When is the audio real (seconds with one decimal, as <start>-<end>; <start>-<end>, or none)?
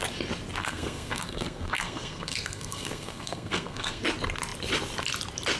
0.0-0.6; 4.0-5.6